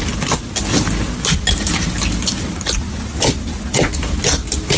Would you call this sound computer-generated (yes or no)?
no